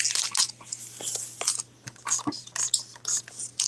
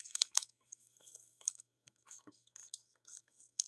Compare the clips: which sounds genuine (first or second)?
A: first